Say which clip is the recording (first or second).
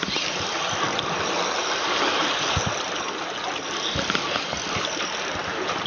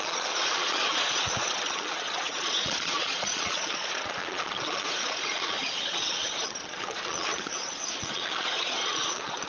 first